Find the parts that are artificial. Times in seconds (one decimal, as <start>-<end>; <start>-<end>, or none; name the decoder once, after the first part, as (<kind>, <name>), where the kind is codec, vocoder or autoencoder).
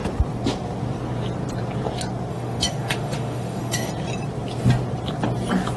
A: 2.3-3.9 (autoencoder, DAC-VAE)